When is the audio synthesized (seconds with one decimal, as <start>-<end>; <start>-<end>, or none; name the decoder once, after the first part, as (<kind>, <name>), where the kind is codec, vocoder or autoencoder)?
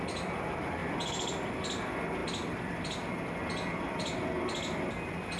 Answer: none